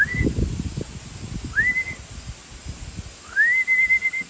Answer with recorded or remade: recorded